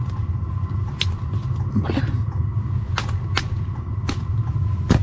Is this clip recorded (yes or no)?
yes